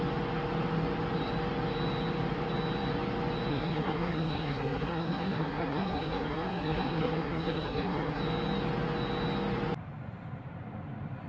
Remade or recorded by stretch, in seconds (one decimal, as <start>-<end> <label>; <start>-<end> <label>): 0.0-3.5 recorded; 3.5-8.2 remade; 8.2-11.3 recorded

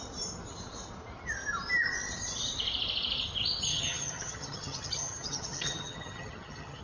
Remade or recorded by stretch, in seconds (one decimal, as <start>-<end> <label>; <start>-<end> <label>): 0.0-3.7 recorded; 3.7-6.8 remade

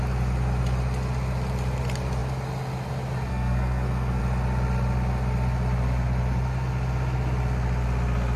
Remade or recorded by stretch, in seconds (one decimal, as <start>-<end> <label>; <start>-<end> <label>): 0.0-3.3 recorded; 3.3-4.2 remade; 4.2-8.4 recorded

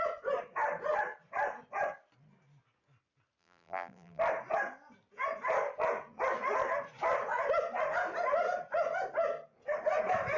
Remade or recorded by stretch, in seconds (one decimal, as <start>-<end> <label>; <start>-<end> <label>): 0.0-3.4 recorded; 3.4-4.2 remade; 4.2-10.4 recorded

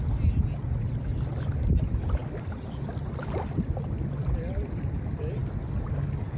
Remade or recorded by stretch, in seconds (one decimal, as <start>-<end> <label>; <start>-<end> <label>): 0.0-6.4 recorded

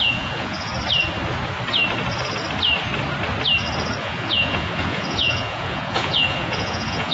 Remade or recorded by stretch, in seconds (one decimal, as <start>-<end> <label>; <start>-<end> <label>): 0.0-0.7 remade; 0.7-4.0 recorded; 4.0-7.1 remade

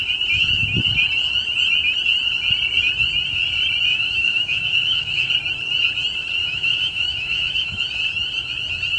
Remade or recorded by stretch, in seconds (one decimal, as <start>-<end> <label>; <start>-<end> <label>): 0.0-3.9 recorded; 3.9-5.3 remade; 5.3-6.4 recorded; 6.4-7.8 remade; 7.8-9.0 recorded